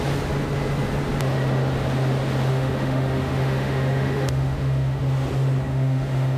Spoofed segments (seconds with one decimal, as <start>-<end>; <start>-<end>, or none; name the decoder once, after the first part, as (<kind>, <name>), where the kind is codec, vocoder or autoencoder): 2.5-5.0 (autoencoder, DAC-VAE); 5.7-6.4